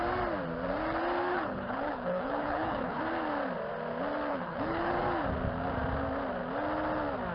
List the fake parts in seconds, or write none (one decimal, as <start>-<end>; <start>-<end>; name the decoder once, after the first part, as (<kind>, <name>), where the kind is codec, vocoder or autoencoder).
1.3-3.0 (codec, HILCodec); 4.3-4.9